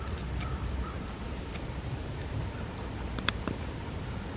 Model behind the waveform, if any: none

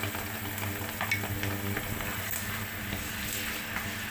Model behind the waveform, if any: none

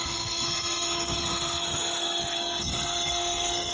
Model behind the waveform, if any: codec, SNAC